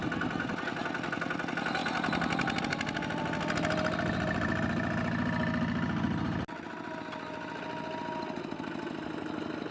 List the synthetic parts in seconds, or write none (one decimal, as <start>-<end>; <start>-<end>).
none